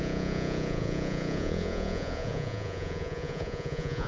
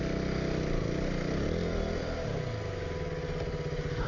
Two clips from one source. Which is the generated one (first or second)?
first